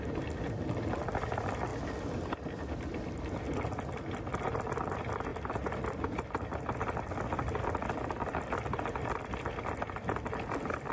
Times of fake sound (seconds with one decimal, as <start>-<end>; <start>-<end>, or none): none